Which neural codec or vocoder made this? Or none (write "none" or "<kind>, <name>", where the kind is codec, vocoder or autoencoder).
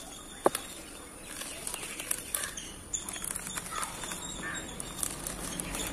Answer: none